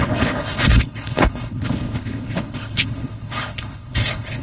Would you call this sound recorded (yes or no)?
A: no